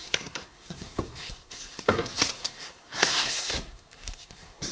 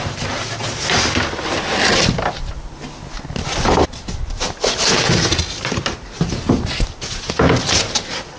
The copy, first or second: first